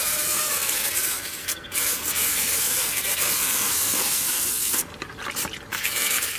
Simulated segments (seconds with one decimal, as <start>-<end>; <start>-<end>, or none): 0.0-4.9; 5.7-6.4